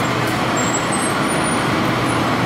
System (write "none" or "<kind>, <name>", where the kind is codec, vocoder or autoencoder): none